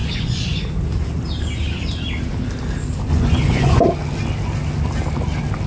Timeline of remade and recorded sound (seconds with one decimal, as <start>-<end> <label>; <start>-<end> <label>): 0.0-0.6 remade; 0.6-3.1 recorded; 3.1-3.8 remade; 3.8-5.7 recorded